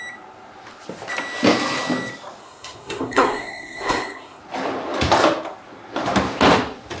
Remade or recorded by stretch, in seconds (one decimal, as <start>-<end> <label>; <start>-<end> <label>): 0.0-2.4 recorded; 2.4-4.4 remade; 4.4-7.0 recorded

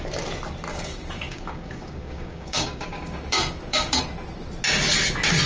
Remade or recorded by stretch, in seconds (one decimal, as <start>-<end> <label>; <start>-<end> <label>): 0.0-0.7 recorded; 0.7-4.0 remade; 4.0-5.5 recorded

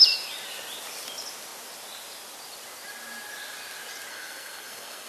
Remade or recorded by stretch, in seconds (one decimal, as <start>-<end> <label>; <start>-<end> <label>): 0.0-4.1 recorded; 4.1-5.1 remade

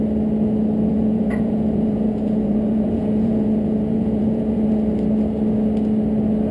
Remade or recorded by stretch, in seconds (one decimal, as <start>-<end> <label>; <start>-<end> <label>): 0.0-0.9 recorded; 0.9-4.8 remade; 4.8-6.5 recorded

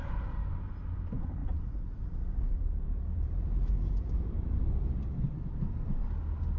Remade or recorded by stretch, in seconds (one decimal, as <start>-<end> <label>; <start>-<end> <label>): 0.0-1.4 recorded; 1.4-5.4 remade; 5.4-6.6 recorded

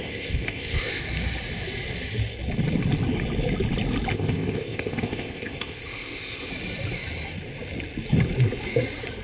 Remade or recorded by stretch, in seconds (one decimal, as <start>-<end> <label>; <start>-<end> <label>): 0.0-1.0 remade; 1.0-4.1 recorded; 4.1-6.5 remade; 6.5-9.2 recorded